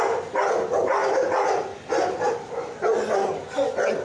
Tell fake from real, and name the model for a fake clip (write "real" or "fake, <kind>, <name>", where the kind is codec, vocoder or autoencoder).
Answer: real